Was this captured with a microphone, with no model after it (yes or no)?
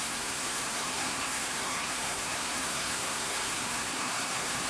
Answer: no